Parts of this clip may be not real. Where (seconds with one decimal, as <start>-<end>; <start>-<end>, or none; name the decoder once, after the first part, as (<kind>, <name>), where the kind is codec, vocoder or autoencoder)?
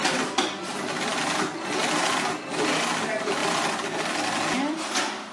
none